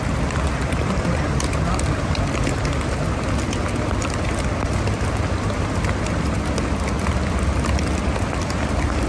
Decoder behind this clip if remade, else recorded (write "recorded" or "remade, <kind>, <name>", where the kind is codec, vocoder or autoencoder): recorded